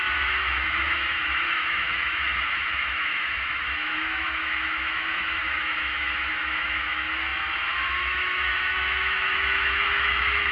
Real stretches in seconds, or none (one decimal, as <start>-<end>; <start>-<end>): none

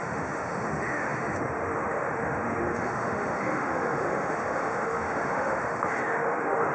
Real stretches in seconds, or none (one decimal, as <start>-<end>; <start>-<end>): none

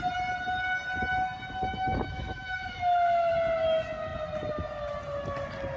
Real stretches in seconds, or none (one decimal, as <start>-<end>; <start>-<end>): 0.0-1.7; 3.3-5.8

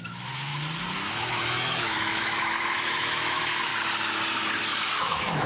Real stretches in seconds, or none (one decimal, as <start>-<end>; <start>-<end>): 0.5-1.1; 3.7-5.0

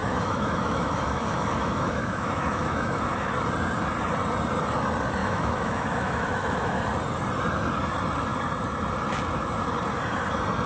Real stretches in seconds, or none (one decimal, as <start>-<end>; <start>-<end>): 3.3-5.2; 6.8-10.7

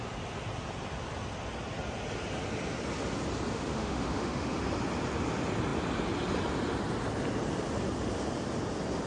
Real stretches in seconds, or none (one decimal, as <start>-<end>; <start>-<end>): 0.0-3.5; 4.6-9.1